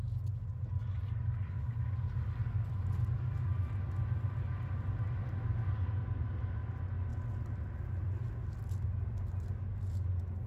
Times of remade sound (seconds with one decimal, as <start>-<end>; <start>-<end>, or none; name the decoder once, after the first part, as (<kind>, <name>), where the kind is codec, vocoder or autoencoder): none